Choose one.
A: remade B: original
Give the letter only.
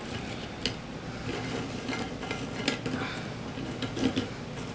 B